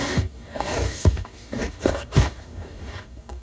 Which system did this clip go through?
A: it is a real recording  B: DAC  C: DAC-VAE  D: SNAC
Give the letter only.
B